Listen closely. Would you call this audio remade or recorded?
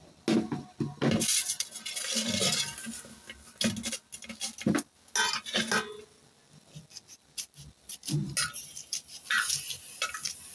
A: recorded